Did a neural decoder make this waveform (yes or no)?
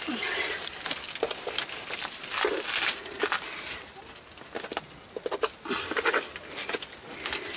no